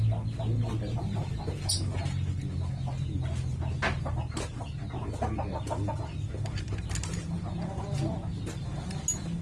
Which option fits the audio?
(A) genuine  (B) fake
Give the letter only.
A